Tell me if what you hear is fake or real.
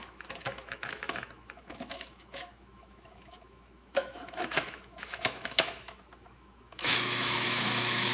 fake